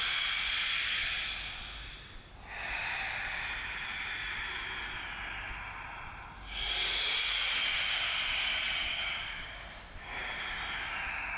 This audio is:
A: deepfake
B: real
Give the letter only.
B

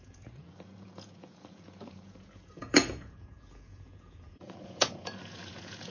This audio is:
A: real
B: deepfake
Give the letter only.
B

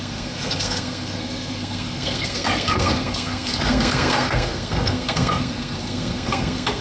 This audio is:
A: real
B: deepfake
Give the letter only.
B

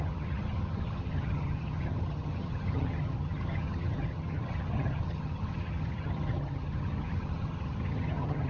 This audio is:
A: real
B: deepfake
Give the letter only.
B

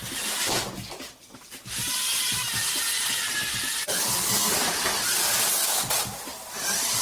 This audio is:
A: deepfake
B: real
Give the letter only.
B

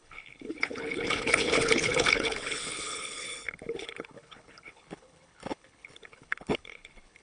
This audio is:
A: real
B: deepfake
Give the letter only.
B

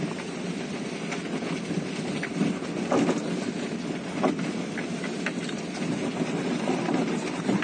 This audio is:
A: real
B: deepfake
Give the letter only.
A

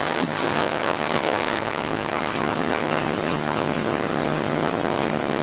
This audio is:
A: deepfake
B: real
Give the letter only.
A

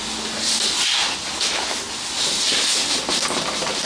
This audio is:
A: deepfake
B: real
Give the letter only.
B